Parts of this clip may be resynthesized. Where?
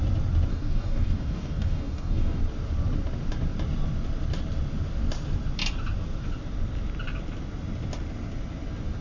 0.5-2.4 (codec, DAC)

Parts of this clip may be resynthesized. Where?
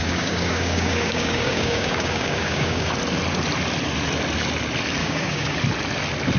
0.0-2.9 (codec, DAC); 5.0-5.6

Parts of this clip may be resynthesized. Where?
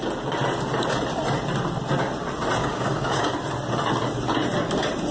2.6-3.3 (codec, DAC)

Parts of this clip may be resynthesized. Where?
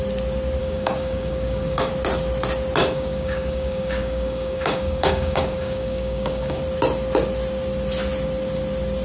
0.6-1.9 (codec, DAC); 2.8-6.6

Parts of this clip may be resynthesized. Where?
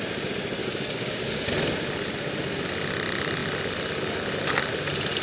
0.6-1.5 (codec, DAC)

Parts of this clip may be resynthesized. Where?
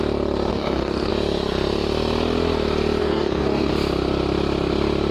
0.5-1.1 (codec, DAC); 3.0-3.7